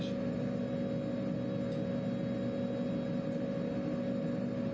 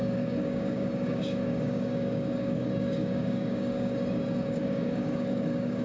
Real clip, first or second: first